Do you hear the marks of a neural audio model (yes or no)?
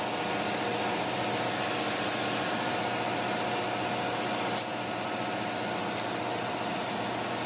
no